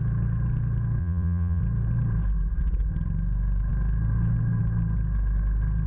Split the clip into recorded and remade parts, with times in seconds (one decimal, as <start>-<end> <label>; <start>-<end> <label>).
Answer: 0.0-1.0 recorded; 1.0-1.6 remade; 1.6-5.9 recorded